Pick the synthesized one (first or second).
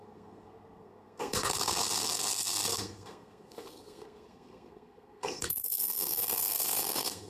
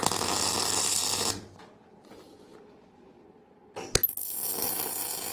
first